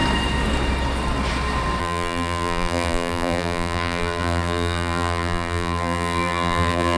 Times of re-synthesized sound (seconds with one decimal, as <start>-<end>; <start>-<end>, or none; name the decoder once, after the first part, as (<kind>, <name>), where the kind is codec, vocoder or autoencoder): 1.8-7.0 (vocoder, BigVGAN v2)